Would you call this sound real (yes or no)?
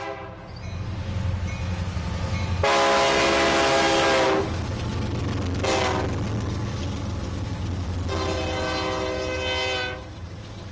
yes